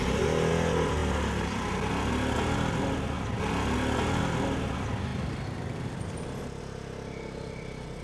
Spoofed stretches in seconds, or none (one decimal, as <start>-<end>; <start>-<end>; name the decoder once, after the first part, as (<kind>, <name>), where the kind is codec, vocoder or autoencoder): none